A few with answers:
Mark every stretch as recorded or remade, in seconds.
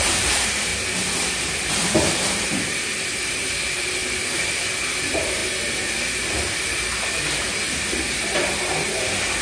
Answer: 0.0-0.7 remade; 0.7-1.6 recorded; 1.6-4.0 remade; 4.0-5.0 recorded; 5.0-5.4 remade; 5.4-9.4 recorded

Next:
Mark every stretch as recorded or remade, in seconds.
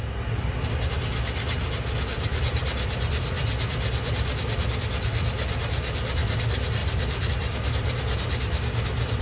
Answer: 0.0-2.3 recorded; 2.3-3.7 remade; 3.7-9.2 recorded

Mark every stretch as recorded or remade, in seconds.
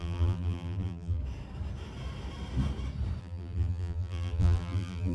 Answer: 0.0-1.2 remade; 1.2-3.2 recorded; 3.2-5.1 remade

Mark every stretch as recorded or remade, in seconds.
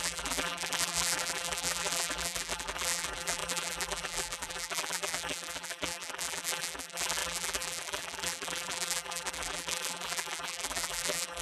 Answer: 0.0-11.4 remade